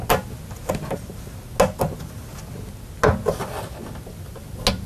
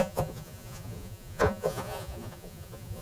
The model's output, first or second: second